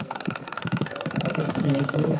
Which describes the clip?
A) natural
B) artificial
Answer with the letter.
B